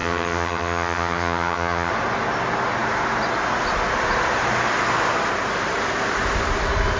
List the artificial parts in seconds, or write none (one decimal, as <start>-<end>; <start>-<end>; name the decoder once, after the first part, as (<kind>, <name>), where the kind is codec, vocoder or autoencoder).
0.0-1.9 (vocoder, HiFi-GAN)

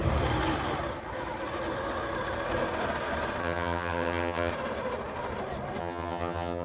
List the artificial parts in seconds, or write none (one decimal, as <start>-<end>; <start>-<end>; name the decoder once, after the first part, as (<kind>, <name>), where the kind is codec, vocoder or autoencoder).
3.4-4.5 (vocoder, HiFi-GAN); 5.8-6.6

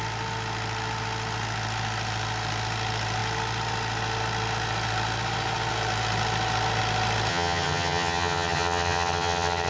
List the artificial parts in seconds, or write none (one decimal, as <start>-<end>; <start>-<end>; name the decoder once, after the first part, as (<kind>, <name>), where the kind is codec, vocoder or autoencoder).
7.3-9.7 (vocoder, HiFi-GAN)

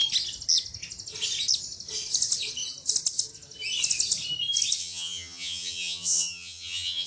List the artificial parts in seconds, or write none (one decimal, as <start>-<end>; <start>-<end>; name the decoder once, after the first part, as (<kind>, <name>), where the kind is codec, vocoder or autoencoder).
4.8-7.1 (vocoder, HiFi-GAN)